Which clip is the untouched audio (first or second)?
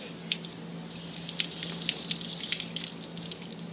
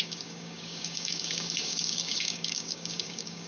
first